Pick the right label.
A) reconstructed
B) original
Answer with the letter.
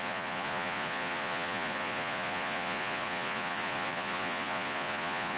A